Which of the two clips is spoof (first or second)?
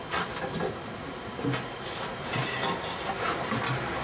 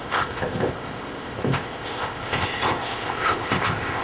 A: second